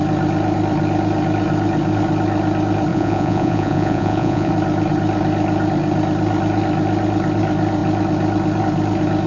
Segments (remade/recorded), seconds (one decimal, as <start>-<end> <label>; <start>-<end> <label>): 0.0-2.9 recorded; 2.9-4.5 remade; 4.5-9.3 recorded